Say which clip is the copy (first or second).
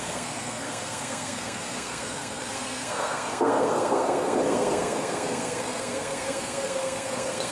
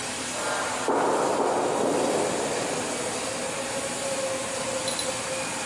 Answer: first